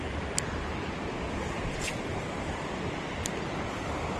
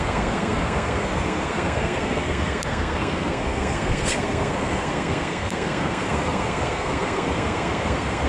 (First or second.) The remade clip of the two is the second